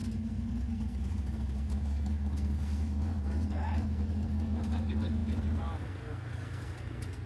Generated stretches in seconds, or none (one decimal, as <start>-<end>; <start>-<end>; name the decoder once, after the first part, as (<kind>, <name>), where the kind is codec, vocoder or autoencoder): 0.0-7.3 (codec, SNAC)